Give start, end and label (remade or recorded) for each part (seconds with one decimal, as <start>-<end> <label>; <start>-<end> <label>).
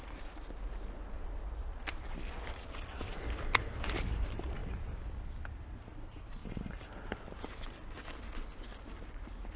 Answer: 0.0-6.4 recorded; 6.4-6.9 remade; 6.9-9.6 recorded